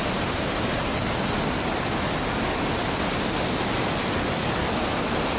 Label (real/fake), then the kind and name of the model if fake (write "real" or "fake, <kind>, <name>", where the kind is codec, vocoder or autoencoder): real